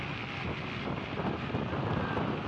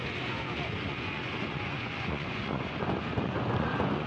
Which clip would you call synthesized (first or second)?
second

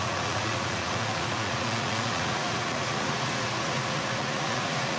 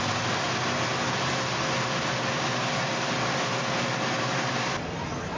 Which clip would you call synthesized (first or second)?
first